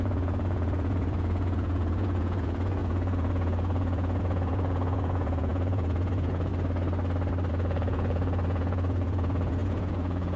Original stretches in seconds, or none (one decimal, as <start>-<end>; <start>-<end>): 6.5-7.5